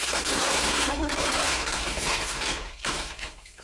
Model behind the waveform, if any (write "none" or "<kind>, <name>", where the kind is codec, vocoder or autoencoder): codec, SNAC